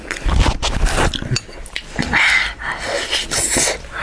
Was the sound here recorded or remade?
recorded